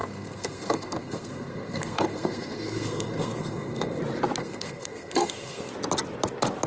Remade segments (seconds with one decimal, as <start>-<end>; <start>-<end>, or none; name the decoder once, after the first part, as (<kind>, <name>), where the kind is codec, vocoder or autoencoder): 0.0-4.0 (codec, SNAC); 4.4-5.7